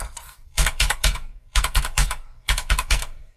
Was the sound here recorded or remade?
remade